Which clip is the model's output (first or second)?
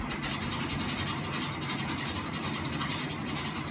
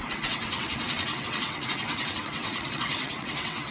second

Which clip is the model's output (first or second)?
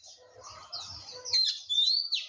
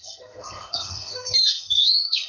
second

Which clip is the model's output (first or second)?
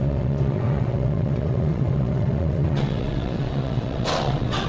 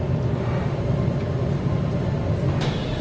first